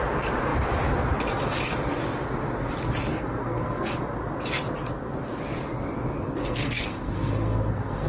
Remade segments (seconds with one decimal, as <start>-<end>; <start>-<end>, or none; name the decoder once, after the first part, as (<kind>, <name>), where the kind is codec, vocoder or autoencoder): 3.1-3.9 (codec, SNAC); 6.4-8.1